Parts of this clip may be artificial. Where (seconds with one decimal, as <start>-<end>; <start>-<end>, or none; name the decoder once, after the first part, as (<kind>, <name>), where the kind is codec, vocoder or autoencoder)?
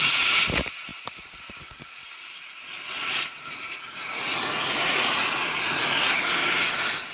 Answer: 0.0-6.4 (vocoder, Vocos)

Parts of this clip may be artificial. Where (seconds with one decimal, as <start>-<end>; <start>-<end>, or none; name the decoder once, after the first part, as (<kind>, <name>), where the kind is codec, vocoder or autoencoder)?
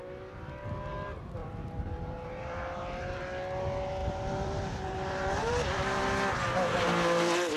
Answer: 1.4-3.2 (vocoder, BigVGAN v2); 4.0-6.0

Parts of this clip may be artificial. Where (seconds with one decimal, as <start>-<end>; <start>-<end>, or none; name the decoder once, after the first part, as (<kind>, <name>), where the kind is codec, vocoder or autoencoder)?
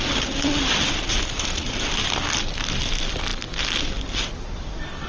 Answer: none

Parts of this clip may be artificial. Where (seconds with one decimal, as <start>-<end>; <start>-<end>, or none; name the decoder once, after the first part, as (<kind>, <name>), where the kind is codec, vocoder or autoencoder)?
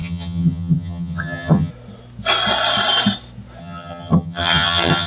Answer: 0.0-1.7 (vocoder, HiFi-GAN); 3.6-5.1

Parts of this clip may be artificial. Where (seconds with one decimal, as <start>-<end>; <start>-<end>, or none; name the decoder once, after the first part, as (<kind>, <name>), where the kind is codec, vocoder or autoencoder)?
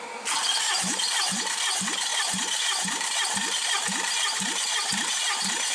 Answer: 0.4-1.0 (vocoder, BigVGAN v2); 2.1-5.7